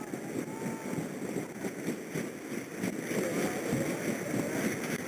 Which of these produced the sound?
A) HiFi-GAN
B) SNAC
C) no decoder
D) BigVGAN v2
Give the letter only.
C